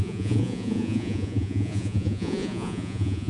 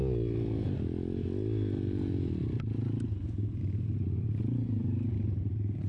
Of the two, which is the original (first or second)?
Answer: second